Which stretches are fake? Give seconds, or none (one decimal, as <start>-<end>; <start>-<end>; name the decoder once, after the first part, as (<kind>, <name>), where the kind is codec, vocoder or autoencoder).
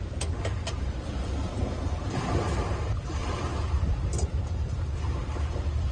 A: 3.2-4.4 (vocoder, BigVGAN v2)